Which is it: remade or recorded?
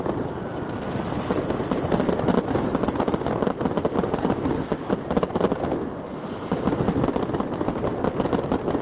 recorded